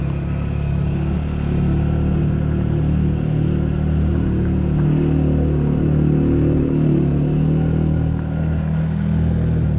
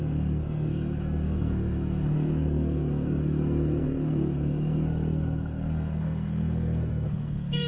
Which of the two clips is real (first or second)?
first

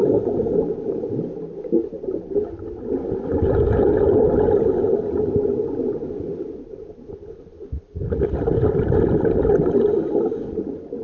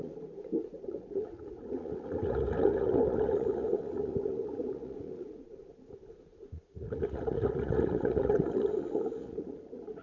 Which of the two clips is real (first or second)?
first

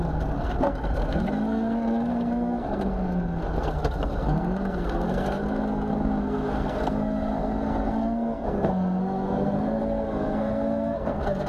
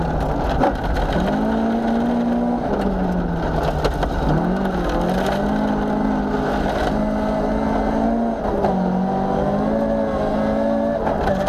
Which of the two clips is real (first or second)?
second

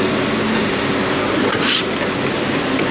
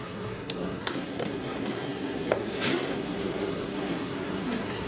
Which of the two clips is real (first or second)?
first